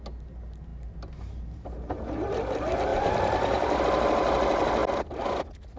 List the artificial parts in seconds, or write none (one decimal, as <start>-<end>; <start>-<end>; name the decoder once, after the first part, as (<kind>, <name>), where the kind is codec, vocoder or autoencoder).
2.9-3.8 (vocoder, BigVGAN v2)